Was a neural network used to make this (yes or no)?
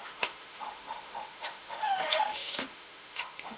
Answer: yes